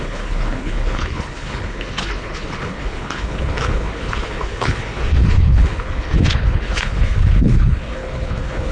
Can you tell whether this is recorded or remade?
remade